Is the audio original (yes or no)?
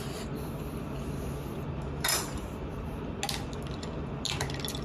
yes